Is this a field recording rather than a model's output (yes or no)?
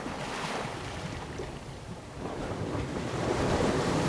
no